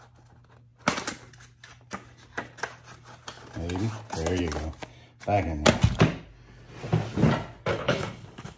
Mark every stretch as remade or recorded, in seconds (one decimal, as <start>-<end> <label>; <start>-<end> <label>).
0.0-7.7 recorded; 7.7-8.6 remade